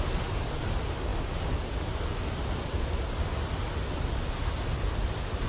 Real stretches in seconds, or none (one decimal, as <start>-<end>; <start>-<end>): 0.0-5.5